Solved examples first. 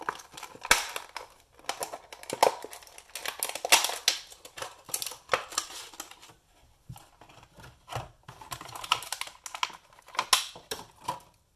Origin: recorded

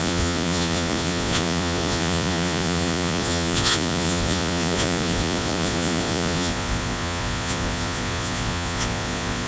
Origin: remade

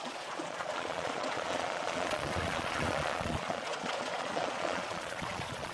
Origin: remade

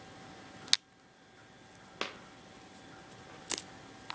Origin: recorded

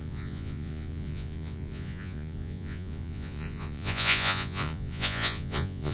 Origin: remade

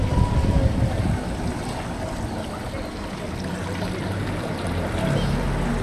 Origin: recorded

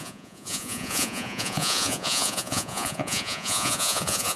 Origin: remade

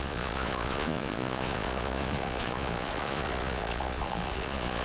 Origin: remade